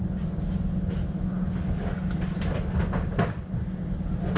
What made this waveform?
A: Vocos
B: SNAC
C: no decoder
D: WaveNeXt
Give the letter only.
C